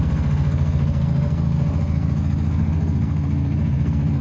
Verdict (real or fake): fake